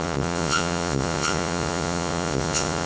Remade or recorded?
remade